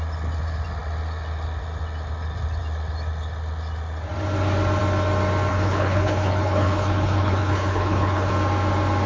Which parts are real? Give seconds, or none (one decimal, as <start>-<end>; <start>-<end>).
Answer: 0.0-5.5; 8.3-9.1